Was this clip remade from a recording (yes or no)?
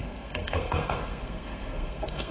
yes